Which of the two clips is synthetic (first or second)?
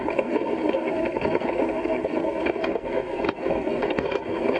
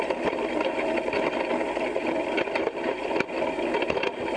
first